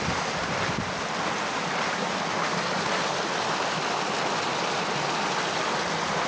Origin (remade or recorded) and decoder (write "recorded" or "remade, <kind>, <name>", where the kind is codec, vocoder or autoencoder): recorded